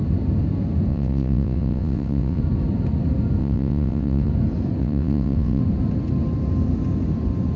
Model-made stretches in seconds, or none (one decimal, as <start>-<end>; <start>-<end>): 0.9-2.4; 3.4-4.3; 4.8-5.6